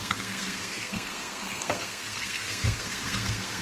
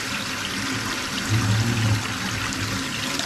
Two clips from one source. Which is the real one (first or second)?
second